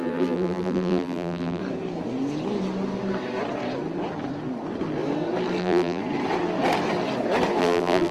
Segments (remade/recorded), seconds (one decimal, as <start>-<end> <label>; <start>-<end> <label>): 0.0-1.6 remade; 1.6-5.6 recorded; 5.6-6.0 remade; 6.0-7.6 recorded; 7.6-8.1 remade